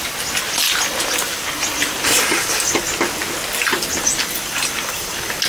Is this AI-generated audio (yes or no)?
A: no